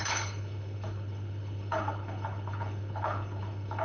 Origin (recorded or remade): remade